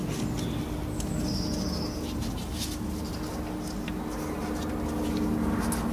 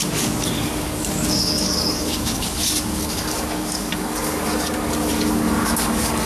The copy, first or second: second